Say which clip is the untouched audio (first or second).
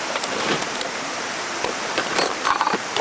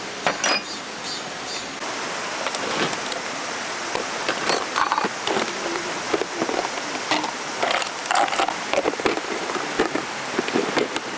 second